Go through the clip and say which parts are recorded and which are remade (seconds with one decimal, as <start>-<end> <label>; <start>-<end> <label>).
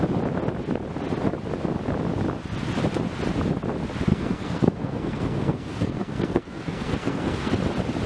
0.0-4.1 recorded; 4.1-7.6 remade; 7.6-8.1 recorded